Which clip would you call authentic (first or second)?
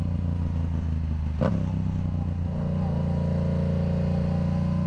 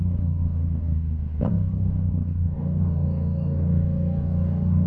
first